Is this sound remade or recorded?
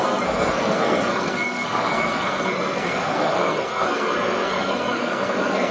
remade